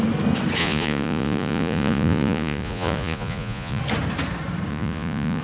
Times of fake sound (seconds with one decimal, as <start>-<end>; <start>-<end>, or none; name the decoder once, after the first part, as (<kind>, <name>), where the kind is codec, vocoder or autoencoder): 0.6-3.8 (vocoder, Vocos); 4.7-5.4

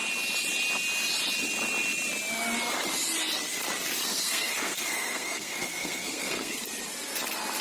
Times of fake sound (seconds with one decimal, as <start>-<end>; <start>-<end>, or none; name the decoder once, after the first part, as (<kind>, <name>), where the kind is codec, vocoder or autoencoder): 4.1-6.6 (codec, SNAC)

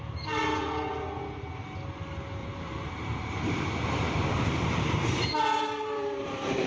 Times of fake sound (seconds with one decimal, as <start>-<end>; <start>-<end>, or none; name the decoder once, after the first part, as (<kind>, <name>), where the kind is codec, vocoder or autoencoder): 2.4-6.7 (vocoder, BigVGAN v2)

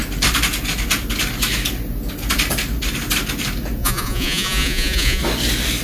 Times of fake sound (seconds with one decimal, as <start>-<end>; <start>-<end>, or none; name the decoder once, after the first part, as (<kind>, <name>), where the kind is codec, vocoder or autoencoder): 3.8-5.2 (vocoder, Vocos)

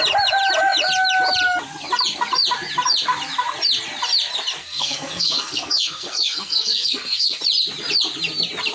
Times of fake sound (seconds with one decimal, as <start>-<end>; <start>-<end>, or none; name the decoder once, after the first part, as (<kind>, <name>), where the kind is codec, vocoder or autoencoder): 4.6-7.4 (codec, SNAC)